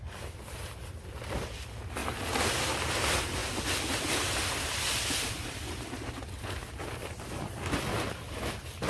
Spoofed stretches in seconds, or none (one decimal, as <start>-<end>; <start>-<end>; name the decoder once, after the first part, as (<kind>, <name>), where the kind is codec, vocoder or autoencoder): 2.0-2.8 (vocoder, BigVGAN v2)